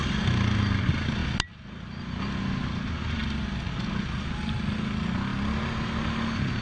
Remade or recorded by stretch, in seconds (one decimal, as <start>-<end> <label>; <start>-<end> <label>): 0.0-5.3 recorded; 5.3-5.8 remade; 5.8-6.6 recorded